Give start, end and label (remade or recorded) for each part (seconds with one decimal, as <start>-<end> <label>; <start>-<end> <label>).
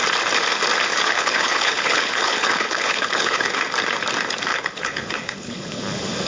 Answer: 0.0-0.9 recorded; 0.9-3.5 remade; 3.5-4.5 recorded; 4.5-5.8 remade; 5.8-6.3 recorded